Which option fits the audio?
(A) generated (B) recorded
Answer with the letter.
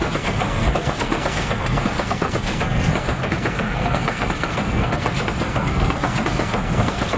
A